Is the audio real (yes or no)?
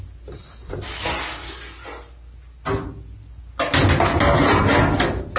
yes